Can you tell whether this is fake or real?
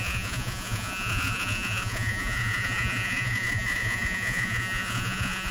fake